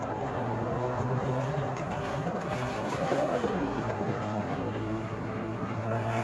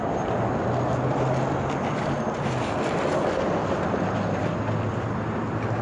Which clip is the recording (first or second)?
second